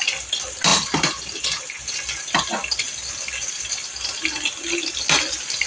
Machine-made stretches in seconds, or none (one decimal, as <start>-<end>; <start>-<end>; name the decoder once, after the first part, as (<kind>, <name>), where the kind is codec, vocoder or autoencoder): none